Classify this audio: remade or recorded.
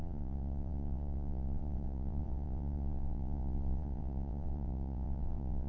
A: remade